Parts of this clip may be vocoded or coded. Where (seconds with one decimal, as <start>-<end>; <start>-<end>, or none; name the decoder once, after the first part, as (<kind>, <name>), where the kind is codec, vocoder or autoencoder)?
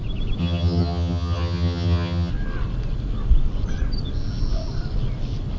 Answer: 0.4-2.3 (vocoder, HiFi-GAN)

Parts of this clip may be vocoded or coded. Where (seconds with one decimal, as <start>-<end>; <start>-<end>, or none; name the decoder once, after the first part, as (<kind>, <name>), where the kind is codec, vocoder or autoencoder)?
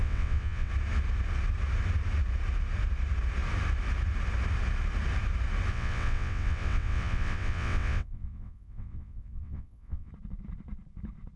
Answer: 0.0-0.7 (vocoder, WaveNeXt); 5.7-10.1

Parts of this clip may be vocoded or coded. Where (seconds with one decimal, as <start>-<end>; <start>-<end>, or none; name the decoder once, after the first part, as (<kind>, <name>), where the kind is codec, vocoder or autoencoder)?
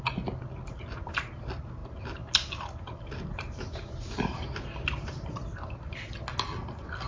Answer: none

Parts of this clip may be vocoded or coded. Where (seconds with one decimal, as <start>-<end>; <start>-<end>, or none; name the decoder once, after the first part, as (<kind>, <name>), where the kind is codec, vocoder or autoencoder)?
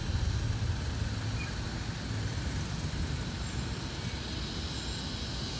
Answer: 2.3-3.7 (vocoder, BigVGAN v2)